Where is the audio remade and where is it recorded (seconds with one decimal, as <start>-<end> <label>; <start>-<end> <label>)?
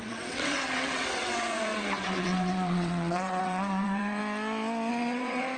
0.0-4.2 remade; 4.2-4.9 recorded; 4.9-5.6 remade